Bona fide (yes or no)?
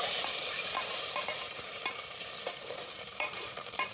no